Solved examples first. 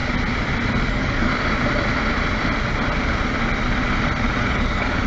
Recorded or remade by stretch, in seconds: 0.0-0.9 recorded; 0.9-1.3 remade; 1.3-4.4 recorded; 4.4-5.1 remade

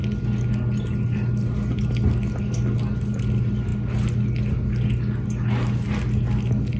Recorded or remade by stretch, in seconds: 0.0-6.8 recorded

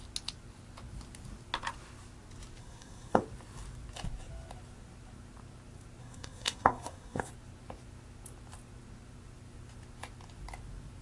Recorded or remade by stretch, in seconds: 0.0-2.6 recorded; 2.6-3.2 remade; 3.2-6.0 recorded; 6.0-7.3 remade; 7.3-11.0 recorded

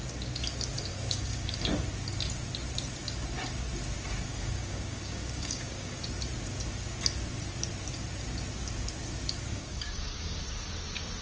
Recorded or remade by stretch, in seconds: 0.0-0.9 recorded; 0.9-1.6 remade; 1.6-4.3 recorded; 4.3-6.0 remade; 6.0-9.5 recorded; 9.5-10.4 remade; 10.4-11.2 recorded